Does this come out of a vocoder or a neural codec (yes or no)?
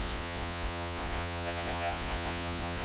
yes